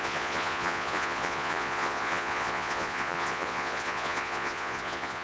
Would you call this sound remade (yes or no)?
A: yes